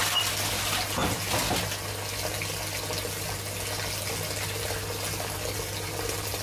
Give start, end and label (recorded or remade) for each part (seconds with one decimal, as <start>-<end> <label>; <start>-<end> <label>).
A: 0.0-0.5 remade; 0.5-6.4 recorded